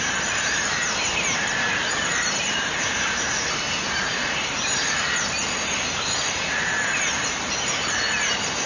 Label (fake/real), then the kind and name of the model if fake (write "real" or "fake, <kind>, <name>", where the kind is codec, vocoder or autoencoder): fake, vocoder, BigVGAN v2